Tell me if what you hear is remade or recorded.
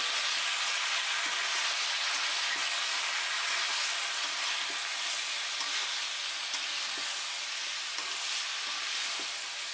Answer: recorded